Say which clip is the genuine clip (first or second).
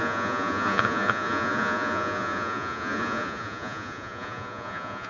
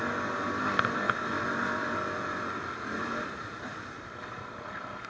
second